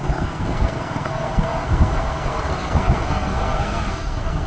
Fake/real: fake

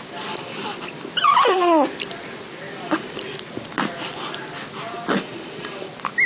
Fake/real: real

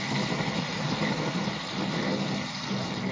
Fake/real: real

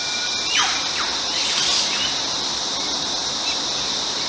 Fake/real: real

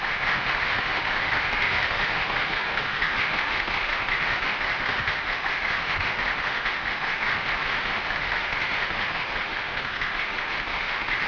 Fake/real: fake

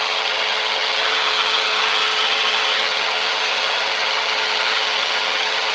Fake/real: fake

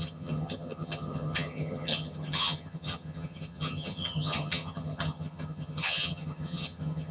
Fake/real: fake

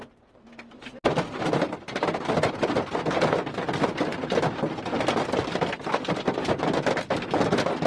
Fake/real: real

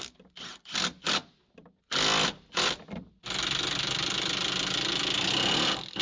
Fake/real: real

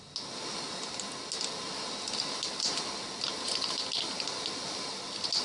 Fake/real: real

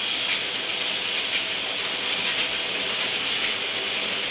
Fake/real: real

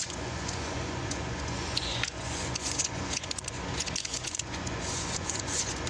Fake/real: fake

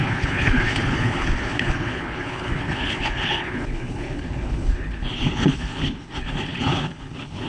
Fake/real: fake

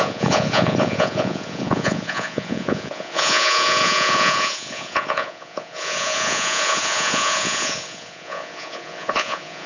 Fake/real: fake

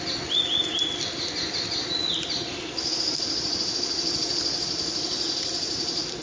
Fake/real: real